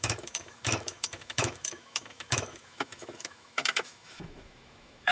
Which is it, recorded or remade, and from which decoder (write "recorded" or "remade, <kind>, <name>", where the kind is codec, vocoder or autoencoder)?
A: remade, autoencoder, DAC-VAE